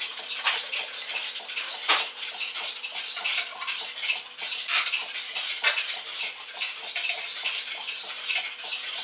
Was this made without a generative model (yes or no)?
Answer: yes